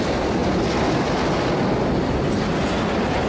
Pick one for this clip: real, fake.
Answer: real